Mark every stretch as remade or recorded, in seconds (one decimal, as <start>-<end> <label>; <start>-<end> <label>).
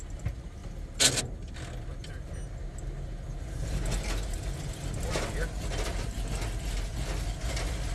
0.0-7.9 recorded